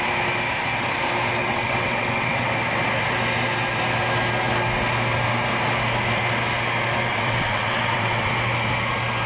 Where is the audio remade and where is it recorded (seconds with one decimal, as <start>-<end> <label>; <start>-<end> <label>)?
0.0-1.4 recorded; 1.4-2.5 remade; 2.5-7.0 recorded; 7.0-8.3 remade; 8.3-9.3 recorded